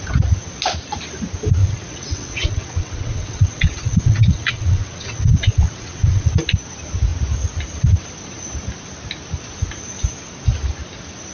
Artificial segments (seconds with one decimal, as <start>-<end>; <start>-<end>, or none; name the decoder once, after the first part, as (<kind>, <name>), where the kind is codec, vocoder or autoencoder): 1.6-6.3 (vocoder, WaveNeXt)